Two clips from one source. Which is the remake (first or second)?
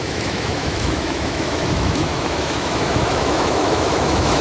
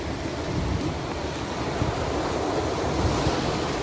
first